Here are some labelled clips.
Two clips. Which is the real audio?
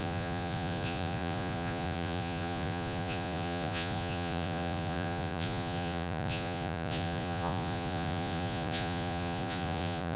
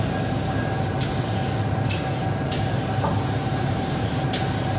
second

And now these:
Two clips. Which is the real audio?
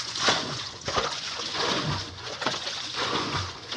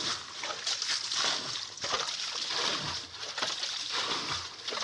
second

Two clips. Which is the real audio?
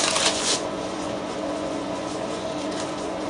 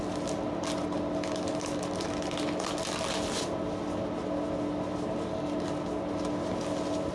second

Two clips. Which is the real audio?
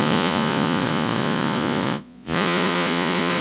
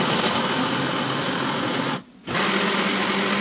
second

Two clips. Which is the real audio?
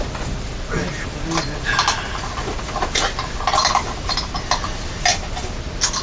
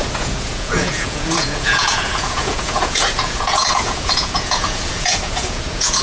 first